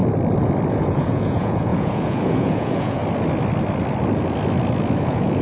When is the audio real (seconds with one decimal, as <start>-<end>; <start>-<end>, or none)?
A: 0.0-0.7; 3.0-5.0